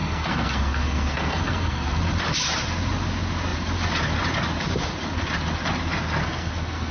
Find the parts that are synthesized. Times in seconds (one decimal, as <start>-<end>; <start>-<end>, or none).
0.0-2.0; 6.2-6.9